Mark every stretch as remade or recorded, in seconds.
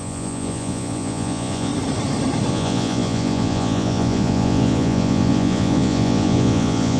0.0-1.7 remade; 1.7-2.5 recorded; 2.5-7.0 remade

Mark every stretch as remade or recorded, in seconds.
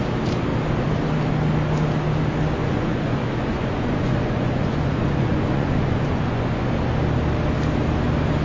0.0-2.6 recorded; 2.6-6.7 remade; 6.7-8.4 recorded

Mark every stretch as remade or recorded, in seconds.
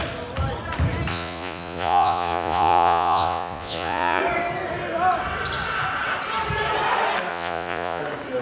0.0-1.1 recorded; 1.1-4.2 remade; 4.2-7.3 recorded; 7.3-8.0 remade; 8.0-8.4 recorded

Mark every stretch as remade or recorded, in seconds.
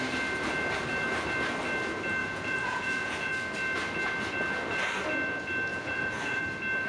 0.0-2.2 recorded; 2.2-3.3 remade; 3.3-5.7 recorded; 5.7-6.4 remade; 6.4-6.9 recorded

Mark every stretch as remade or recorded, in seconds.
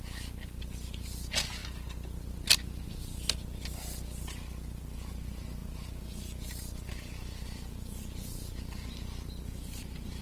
0.0-10.2 recorded